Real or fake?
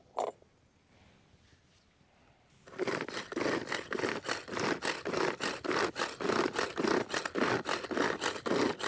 real